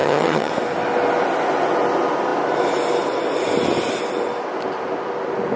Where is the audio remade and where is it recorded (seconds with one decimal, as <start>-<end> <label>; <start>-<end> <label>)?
0.0-0.5 remade; 0.5-5.6 recorded